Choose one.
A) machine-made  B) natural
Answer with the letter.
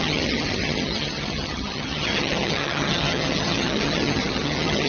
A